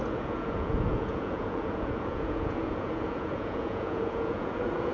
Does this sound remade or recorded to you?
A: remade